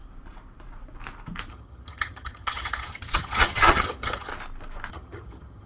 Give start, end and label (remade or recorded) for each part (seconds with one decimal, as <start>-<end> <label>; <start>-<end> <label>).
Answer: 0.0-1.5 recorded; 1.5-4.3 remade; 4.3-4.9 recorded; 4.9-5.7 remade